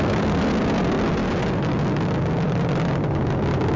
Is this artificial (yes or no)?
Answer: no